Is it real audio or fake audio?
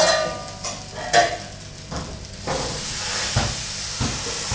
real